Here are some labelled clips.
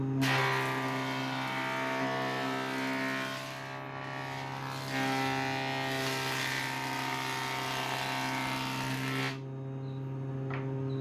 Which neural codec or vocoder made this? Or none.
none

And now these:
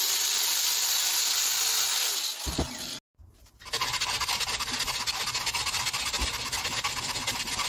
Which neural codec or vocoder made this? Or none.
none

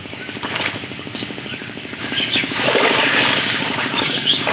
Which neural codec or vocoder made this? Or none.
codec, DAC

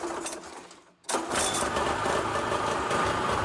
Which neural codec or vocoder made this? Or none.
none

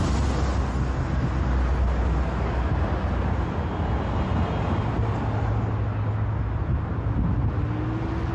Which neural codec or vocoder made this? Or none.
none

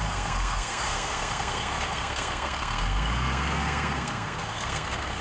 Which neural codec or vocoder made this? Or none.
codec, SNAC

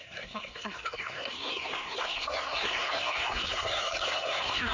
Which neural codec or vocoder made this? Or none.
codec, SNAC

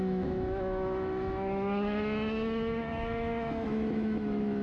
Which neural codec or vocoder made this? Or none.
autoencoder, DAC-VAE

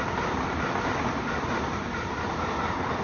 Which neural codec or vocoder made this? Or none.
none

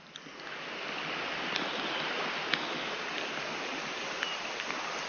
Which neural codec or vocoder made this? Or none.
none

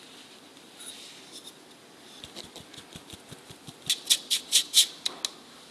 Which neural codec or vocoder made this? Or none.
none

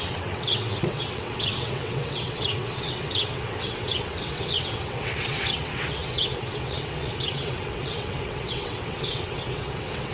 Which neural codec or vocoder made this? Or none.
vocoder, WaveNeXt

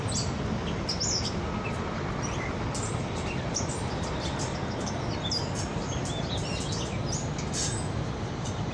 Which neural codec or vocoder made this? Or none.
none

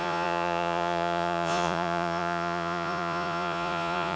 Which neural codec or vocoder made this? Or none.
vocoder, Vocos